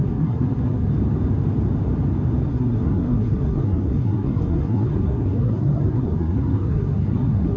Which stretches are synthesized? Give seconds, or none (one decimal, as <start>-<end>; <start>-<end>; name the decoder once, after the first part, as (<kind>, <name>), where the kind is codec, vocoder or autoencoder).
0.0-0.9 (codec, SNAC); 2.5-7.6